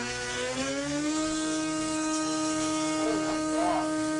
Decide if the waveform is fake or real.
fake